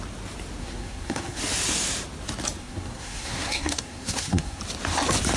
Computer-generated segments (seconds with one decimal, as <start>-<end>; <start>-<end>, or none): 0.6-1.4; 2.6-4.6